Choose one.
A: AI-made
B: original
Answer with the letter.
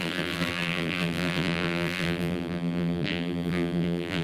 A